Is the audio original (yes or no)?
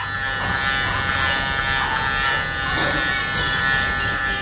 yes